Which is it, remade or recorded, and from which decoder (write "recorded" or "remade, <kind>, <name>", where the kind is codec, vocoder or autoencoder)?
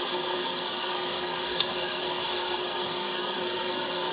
remade, codec, SNAC